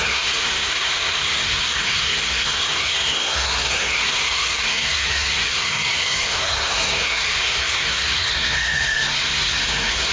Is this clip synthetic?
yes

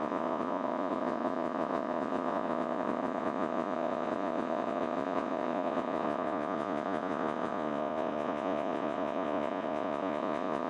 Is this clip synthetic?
yes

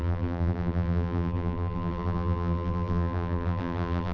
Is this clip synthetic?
yes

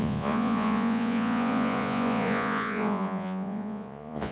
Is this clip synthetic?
yes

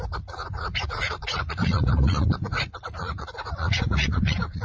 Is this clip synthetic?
yes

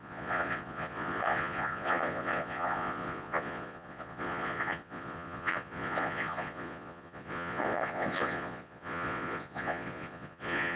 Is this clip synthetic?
yes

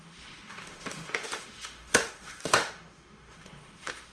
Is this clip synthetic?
yes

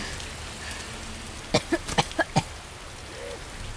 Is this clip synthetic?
no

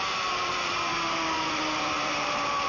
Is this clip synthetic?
yes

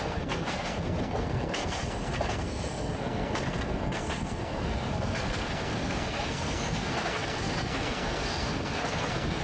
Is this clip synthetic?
yes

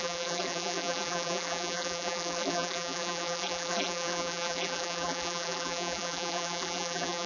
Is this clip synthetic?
yes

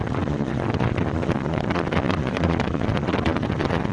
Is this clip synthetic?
yes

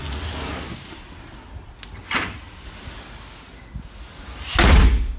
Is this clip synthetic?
no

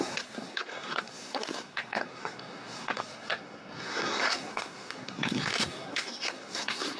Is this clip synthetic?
yes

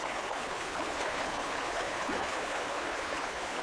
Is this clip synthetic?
yes